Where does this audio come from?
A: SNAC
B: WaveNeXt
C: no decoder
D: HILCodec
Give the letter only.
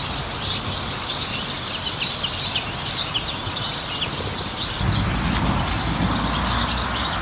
C